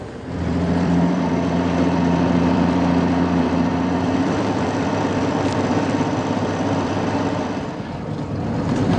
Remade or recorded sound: remade